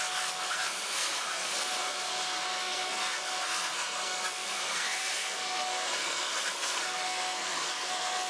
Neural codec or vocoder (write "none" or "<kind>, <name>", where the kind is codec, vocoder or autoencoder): codec, SNAC